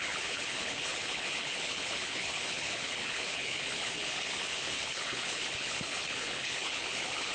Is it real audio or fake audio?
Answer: fake